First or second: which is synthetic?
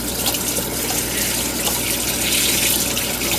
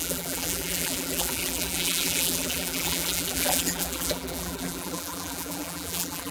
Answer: second